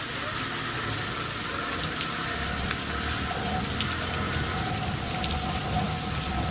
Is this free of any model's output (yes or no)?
yes